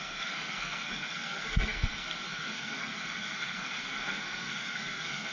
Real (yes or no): no